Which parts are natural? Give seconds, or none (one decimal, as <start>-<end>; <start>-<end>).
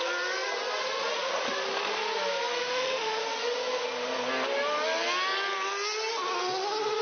0.0-2.6; 3.2-7.0